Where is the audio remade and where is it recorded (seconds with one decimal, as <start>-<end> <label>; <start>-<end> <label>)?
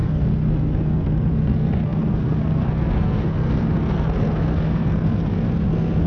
0.0-6.1 remade